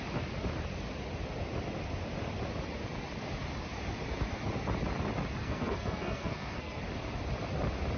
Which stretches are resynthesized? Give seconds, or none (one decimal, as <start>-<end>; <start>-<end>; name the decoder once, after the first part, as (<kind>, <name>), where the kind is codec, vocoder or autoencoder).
5.4-6.8 (codec, SNAC)